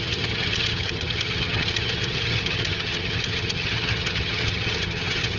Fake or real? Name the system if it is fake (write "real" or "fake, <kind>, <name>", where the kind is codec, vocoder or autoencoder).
fake, vocoder, HiFi-GAN